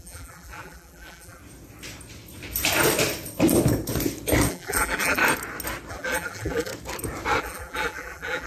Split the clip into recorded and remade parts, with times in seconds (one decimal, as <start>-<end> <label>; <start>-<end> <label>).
0.0-1.4 remade; 1.4-4.5 recorded; 4.5-5.2 remade; 5.2-5.9 recorded; 5.9-6.7 remade; 6.7-7.4 recorded; 7.4-8.5 remade